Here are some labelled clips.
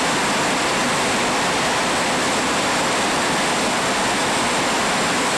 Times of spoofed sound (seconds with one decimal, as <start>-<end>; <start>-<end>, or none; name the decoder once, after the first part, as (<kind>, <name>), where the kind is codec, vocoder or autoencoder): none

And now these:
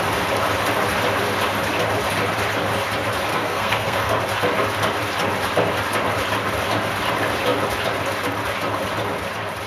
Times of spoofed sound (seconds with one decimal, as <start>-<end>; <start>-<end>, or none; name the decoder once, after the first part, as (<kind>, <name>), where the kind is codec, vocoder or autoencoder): 3.3-4.2 (codec, SNAC)

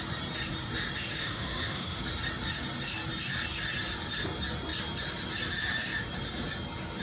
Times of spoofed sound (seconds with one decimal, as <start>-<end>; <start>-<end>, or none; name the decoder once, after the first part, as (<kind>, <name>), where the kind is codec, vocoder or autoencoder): 1.2-2.0 (autoencoder, DAC-VAE)

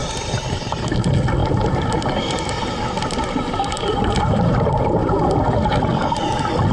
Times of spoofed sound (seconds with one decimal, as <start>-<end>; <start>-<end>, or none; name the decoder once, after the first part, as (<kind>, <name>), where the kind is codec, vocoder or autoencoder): 0.0-0.8 (vocoder, BigVGAN v2); 1.4-5.4

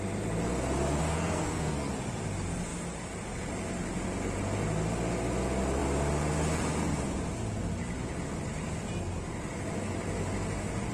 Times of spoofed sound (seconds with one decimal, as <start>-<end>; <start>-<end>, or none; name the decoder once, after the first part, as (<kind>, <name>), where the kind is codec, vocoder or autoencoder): 1.0-1.9 (codec, SNAC)

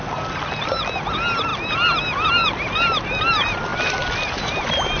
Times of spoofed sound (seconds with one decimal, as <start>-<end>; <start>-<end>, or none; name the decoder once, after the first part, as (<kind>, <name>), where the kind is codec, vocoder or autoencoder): none

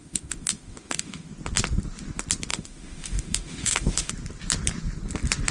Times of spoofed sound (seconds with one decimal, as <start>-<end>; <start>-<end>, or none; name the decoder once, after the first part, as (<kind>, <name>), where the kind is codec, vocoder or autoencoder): 0.0-1.3 (autoencoder, DAC-VAE); 2.5-4.1